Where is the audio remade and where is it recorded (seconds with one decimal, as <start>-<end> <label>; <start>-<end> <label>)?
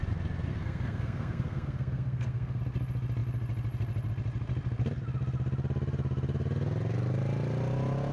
0.0-0.5 recorded; 0.5-2.6 remade; 2.6-8.1 recorded